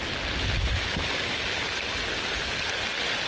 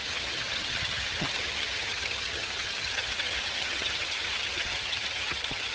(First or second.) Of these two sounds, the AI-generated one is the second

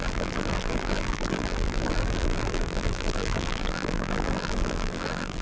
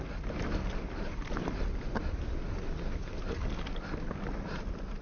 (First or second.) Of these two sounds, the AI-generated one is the first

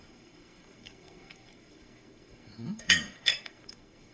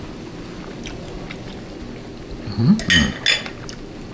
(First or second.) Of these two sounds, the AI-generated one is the first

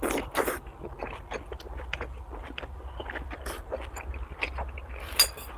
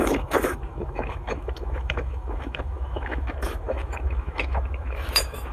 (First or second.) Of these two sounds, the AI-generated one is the second